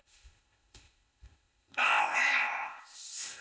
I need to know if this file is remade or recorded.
remade